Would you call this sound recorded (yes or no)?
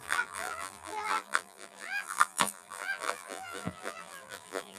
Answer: no